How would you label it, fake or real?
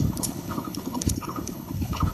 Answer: fake